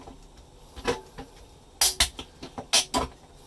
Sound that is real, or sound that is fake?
real